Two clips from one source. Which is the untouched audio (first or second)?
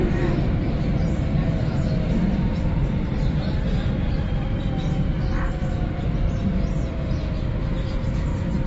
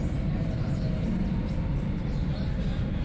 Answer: second